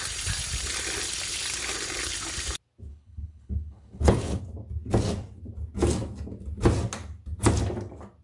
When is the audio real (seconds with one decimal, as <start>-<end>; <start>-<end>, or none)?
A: 0.0-2.9; 4.4-8.2